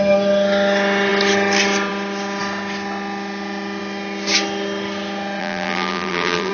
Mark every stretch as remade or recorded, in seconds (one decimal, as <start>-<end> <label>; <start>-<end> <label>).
0.0-5.4 recorded; 5.4-6.5 remade